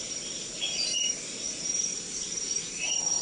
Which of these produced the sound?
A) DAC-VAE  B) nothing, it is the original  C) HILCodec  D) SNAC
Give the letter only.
B